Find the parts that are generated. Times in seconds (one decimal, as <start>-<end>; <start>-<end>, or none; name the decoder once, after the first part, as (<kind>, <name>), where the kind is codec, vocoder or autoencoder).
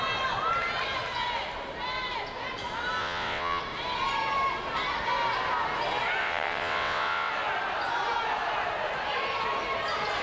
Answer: 3.0-3.6 (vocoder, WaveNeXt); 6.2-7.3